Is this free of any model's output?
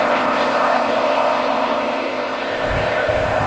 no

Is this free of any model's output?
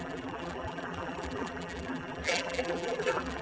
no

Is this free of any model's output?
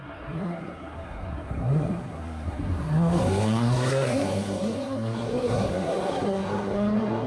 no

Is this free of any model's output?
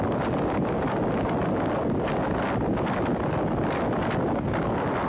yes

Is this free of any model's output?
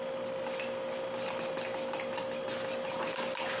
yes